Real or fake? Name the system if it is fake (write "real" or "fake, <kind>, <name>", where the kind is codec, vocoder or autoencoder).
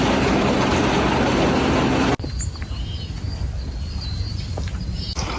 real